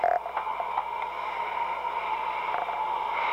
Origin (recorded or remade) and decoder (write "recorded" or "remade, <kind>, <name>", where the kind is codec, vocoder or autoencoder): recorded